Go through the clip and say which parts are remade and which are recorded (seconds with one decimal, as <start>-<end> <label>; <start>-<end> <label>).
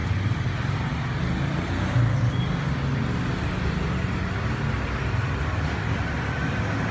0.0-6.9 recorded